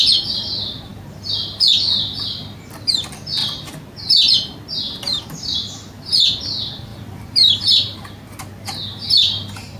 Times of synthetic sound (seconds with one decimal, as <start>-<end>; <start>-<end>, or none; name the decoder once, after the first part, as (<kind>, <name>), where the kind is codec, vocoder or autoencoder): 0.0-3.4 (vocoder, BigVGAN v2); 5.4-6.9; 7.7-9.8